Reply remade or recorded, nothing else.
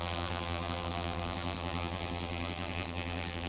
remade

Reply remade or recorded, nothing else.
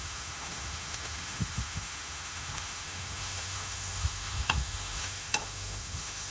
remade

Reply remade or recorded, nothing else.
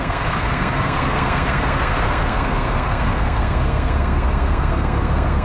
remade